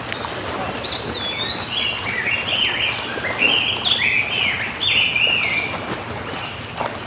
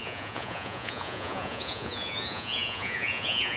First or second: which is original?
first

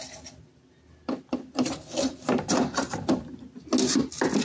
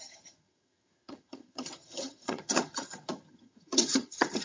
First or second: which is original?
first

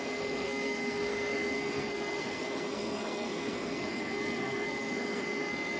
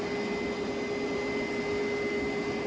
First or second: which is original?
second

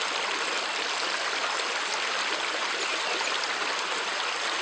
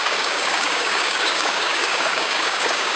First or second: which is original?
first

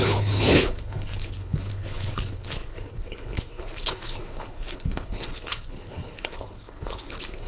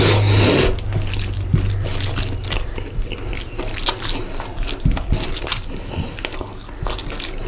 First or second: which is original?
second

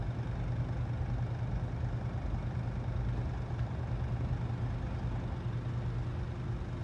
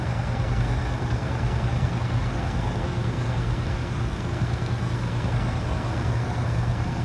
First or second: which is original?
first